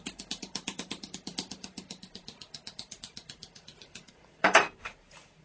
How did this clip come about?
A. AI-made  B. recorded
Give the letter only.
A